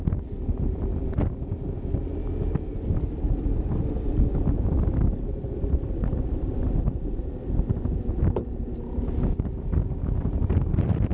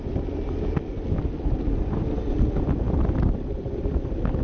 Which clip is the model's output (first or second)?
second